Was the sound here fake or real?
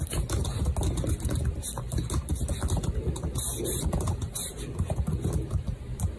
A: real